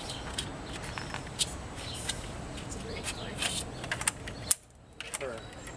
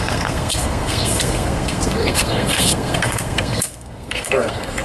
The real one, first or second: first